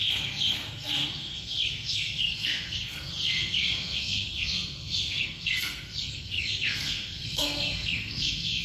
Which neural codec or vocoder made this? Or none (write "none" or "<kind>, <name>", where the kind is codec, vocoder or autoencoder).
codec, SNAC